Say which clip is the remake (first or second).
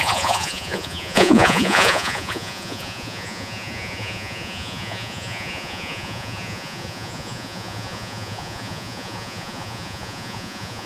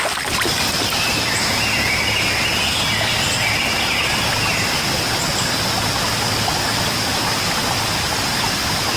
first